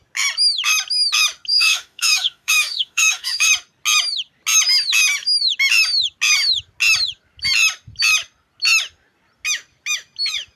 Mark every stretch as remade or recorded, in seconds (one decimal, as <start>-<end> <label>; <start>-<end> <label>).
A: 0.0-1.5 recorded; 1.5-3.5 remade; 3.5-10.6 recorded